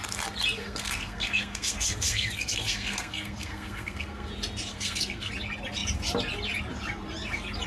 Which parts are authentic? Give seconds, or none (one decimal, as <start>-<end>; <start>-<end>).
0.0-0.6; 4.3-4.7; 5.3-7.7